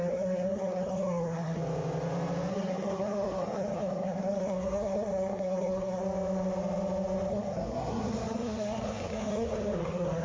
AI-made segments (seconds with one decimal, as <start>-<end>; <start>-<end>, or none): 0.0-1.6; 2.5-6.0; 7.3-10.2